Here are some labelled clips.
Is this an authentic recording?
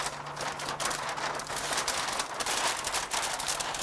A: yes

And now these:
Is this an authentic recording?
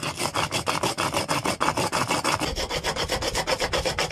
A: yes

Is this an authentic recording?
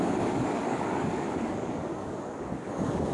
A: no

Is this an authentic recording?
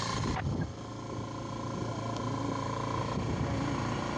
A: yes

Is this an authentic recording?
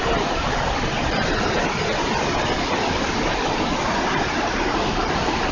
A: yes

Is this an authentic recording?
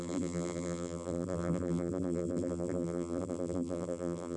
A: no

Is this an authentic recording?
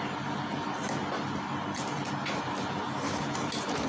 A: no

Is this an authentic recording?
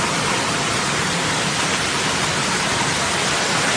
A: yes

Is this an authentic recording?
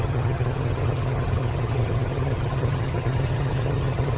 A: no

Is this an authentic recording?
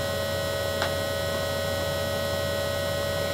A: yes